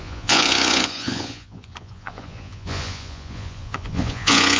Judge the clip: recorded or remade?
remade